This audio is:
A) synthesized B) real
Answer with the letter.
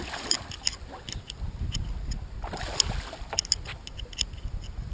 B